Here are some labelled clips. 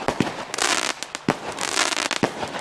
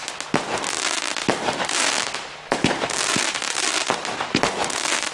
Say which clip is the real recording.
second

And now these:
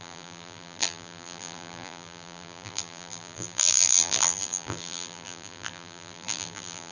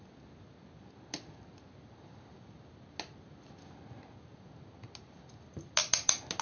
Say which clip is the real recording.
second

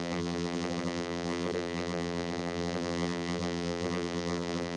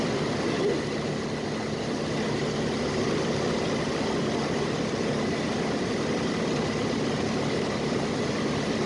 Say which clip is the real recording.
second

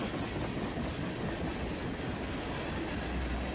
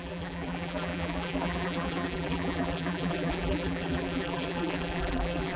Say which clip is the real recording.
first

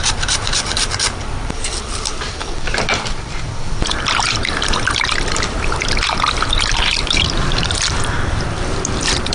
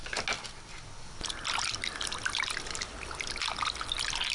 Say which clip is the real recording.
second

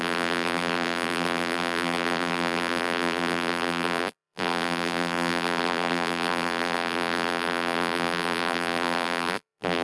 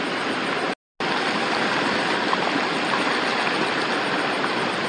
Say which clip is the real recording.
second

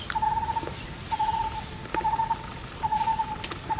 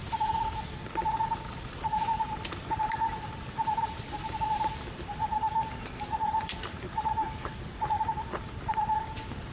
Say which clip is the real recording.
first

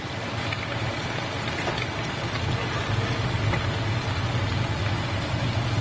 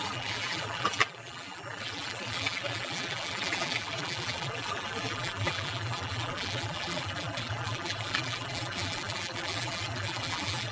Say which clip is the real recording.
first